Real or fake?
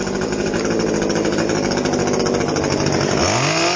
real